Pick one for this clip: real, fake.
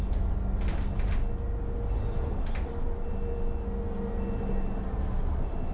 real